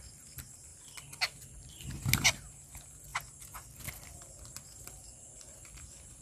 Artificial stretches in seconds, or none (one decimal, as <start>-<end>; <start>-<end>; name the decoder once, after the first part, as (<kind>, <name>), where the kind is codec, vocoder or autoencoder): none